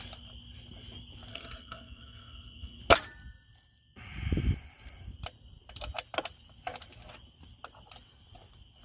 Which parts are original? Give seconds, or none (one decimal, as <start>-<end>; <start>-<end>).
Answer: 0.0-1.3; 2.8-8.8